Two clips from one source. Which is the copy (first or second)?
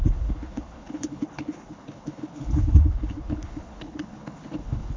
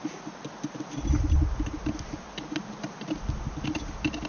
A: first